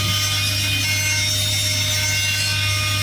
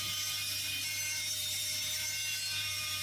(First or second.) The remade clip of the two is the second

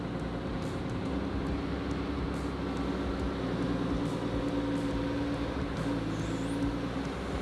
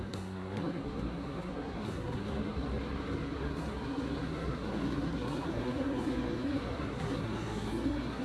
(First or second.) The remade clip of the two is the second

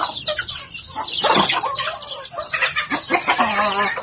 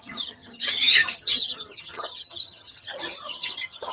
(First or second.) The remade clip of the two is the second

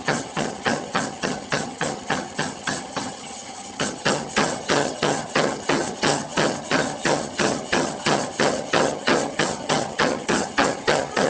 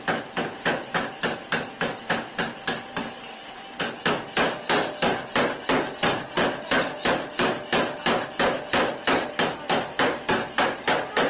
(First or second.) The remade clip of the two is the first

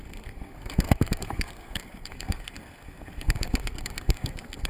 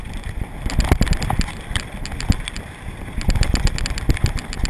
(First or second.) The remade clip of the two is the first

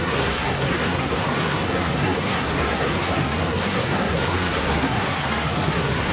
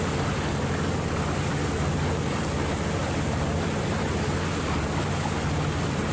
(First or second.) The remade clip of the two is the first